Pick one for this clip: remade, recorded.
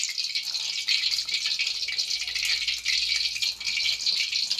recorded